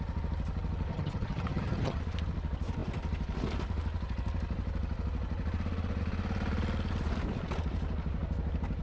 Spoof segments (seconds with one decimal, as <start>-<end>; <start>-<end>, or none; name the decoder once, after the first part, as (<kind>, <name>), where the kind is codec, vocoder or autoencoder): 0.9-2.0 (vocoder, HiFi-GAN)